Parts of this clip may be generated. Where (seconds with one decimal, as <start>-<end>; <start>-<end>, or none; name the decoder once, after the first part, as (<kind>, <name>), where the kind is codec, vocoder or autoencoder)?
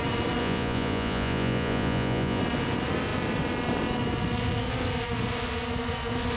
0.4-2.4 (vocoder, Vocos)